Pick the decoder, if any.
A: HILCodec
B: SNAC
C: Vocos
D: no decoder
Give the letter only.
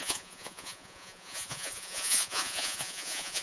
C